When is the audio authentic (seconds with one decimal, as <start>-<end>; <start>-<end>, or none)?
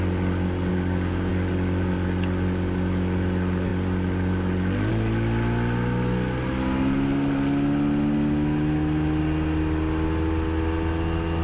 0.0-0.7; 1.3-11.4